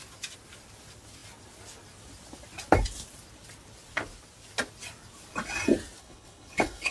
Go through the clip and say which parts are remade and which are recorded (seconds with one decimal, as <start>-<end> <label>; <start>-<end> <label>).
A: 0.0-6.0 recorded; 6.0-6.9 remade